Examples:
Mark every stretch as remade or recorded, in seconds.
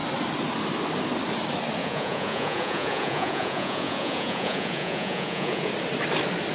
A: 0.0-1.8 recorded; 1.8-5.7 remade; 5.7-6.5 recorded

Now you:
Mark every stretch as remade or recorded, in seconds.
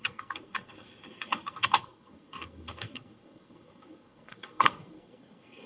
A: 0.0-5.7 remade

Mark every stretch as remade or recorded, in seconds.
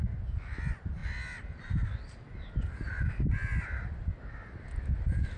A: 0.0-5.4 recorded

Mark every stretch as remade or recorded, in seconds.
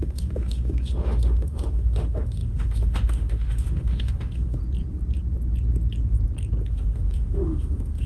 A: 0.0-4.6 remade; 4.6-6.7 recorded; 6.7-8.1 remade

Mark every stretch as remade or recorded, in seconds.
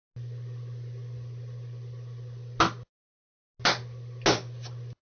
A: 0.0-5.1 recorded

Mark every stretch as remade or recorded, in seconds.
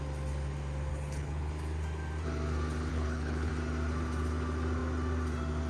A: 0.0-0.9 recorded; 0.9-1.5 remade; 1.5-2.9 recorded; 2.9-3.5 remade; 3.5-5.7 recorded